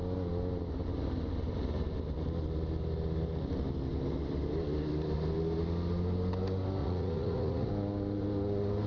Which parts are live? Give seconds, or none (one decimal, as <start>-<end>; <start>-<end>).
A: 0.0-6.8; 7.7-8.9